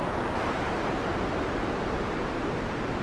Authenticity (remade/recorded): recorded